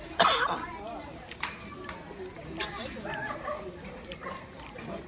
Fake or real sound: real